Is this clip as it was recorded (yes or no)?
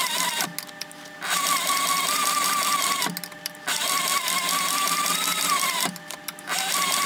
yes